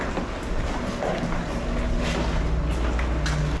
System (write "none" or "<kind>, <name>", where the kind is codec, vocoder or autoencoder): none